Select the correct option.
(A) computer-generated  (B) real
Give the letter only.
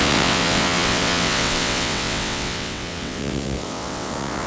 A